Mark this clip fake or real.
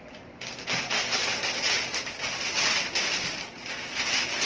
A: real